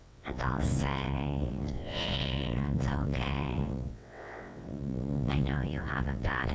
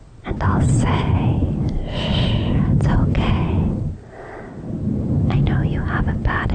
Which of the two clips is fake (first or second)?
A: first